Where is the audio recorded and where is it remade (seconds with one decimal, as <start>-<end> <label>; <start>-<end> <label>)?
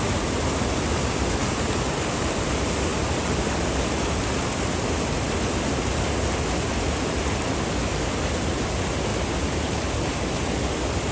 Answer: 0.0-11.1 recorded